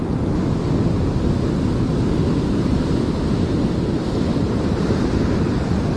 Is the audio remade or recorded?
recorded